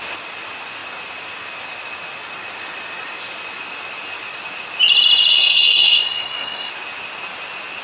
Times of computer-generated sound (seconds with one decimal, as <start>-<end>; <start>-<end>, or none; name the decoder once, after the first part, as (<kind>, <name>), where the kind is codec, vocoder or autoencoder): 5.3-6.7 (codec, SNAC)